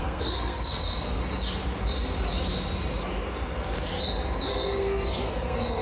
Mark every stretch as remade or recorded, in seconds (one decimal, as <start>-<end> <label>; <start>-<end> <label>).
0.0-1.2 remade; 1.2-4.5 recorded; 4.5-5.8 remade